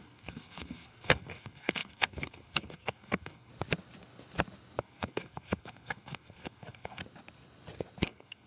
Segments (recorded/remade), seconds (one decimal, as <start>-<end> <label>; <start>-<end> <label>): 0.0-3.5 remade; 3.5-4.8 recorded; 4.8-7.0 remade; 7.0-8.0 recorded; 8.0-8.5 remade